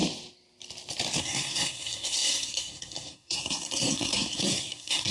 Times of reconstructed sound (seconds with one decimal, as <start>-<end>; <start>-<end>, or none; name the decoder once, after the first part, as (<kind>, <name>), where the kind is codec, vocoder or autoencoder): 1.2-5.1 (codec, SNAC)